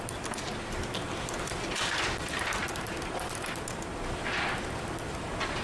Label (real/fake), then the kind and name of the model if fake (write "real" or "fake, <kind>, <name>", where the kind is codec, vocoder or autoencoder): real